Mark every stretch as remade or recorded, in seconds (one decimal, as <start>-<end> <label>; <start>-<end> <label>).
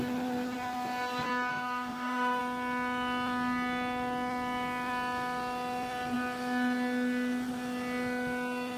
0.0-1.5 recorded; 1.5-2.4 remade; 2.4-8.8 recorded